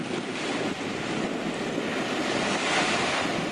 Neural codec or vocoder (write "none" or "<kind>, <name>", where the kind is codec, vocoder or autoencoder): none